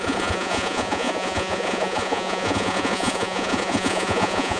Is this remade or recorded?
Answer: remade